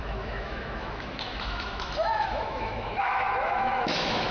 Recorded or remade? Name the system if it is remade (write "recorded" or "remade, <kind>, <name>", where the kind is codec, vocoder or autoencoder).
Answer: remade, autoencoder, DAC-VAE